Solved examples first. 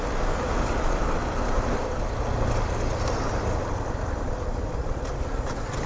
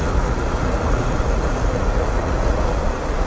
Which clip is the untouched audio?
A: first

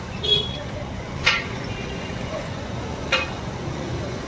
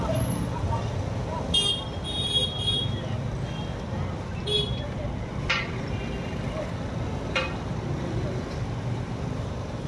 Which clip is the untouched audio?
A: second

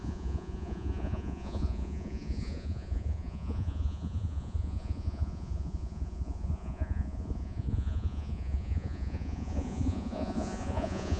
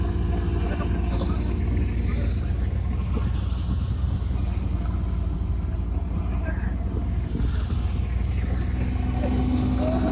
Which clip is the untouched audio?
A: second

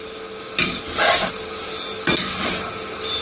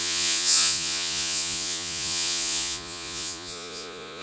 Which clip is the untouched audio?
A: first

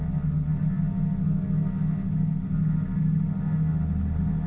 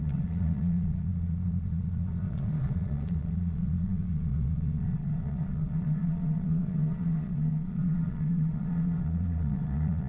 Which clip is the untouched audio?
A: first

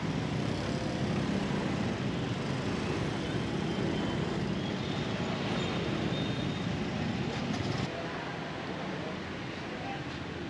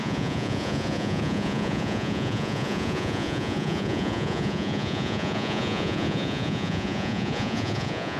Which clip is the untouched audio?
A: first